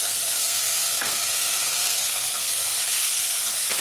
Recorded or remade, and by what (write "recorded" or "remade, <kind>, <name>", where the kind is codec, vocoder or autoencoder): remade, codec, SNAC